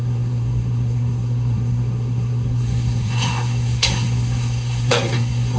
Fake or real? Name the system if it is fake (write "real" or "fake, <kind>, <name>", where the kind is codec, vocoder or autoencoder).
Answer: fake, codec, SNAC